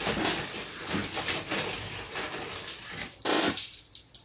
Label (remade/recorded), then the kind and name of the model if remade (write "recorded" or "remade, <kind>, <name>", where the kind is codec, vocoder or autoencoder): remade, vocoder, BigVGAN v2